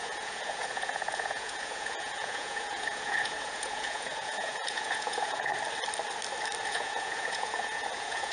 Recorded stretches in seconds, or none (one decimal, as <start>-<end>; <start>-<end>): 5.5-6.6